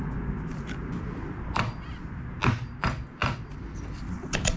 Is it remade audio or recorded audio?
recorded